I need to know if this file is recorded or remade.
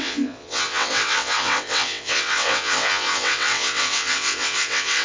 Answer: remade